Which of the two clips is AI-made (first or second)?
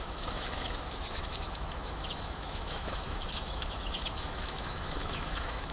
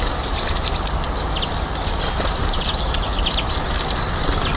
first